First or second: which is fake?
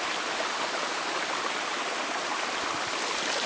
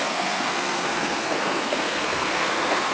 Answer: second